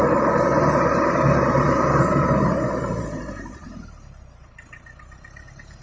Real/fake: fake